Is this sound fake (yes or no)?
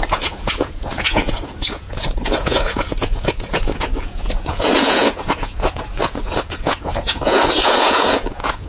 yes